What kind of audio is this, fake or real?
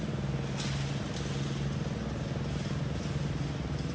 real